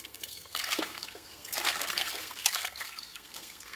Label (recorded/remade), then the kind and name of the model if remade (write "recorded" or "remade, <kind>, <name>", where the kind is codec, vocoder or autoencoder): remade, codec, SNAC